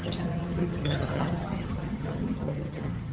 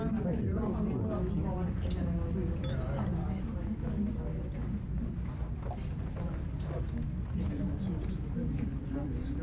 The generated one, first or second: first